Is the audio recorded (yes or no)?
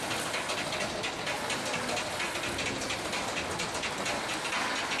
yes